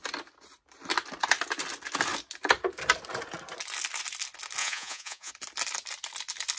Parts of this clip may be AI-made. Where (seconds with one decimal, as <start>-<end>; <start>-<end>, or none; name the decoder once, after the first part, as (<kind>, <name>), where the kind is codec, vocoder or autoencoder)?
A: 4.6-5.3 (vocoder, Vocos)